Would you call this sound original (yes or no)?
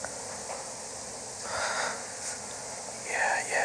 yes